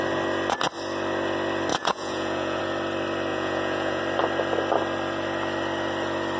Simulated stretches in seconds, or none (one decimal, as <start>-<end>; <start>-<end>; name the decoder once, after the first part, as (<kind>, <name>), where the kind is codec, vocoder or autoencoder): 1.7-2.6 (vocoder, Vocos); 3.3-4.0